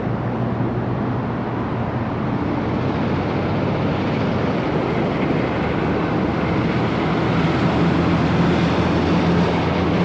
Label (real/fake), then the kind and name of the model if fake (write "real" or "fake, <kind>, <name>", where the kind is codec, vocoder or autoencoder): real